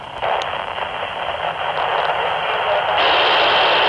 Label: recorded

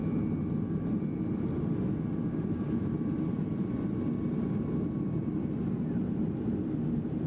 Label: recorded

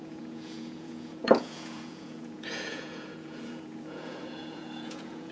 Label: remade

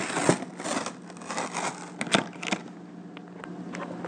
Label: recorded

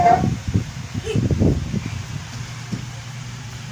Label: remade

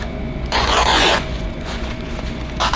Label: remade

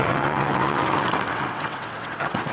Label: remade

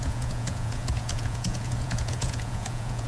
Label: remade